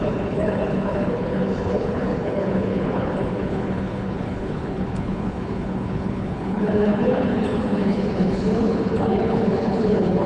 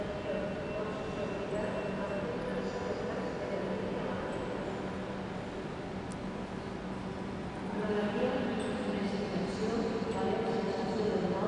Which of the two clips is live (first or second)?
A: second